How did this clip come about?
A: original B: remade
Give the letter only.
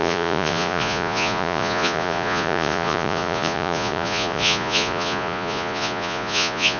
B